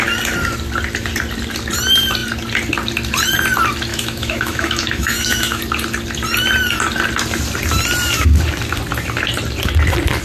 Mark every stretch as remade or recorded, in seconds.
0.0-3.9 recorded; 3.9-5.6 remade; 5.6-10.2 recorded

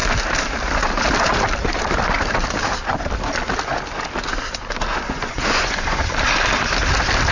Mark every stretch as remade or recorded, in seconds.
0.0-4.9 recorded; 4.9-6.1 remade; 6.1-7.3 recorded

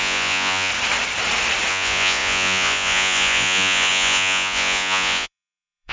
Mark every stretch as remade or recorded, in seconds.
0.0-0.7 remade; 0.7-1.7 recorded; 1.7-5.9 remade

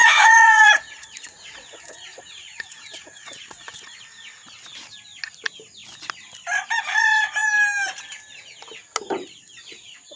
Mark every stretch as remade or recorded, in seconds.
0.0-4.0 remade; 4.0-10.2 recorded

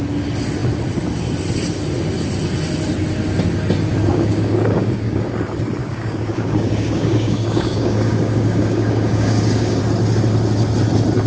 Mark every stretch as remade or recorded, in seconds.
0.0-4.1 recorded; 4.1-5.3 remade; 5.3-5.8 recorded; 5.8-9.8 remade; 9.8-11.3 recorded